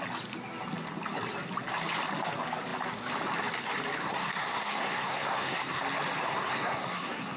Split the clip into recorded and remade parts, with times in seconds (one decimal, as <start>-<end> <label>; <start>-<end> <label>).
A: 0.0-4.0 recorded; 4.0-5.8 remade; 5.8-6.3 recorded; 6.3-7.4 remade